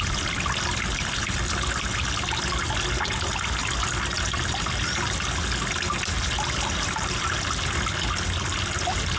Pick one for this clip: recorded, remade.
recorded